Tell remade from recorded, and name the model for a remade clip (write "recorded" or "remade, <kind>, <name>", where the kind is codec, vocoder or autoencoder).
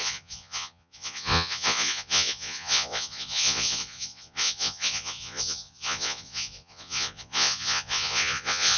remade, vocoder, Vocos